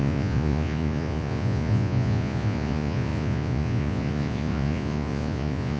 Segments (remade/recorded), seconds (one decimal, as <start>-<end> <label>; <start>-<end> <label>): 0.0-5.8 remade